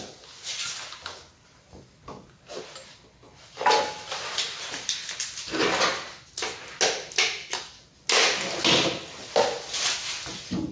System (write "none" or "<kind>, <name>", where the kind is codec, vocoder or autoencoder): none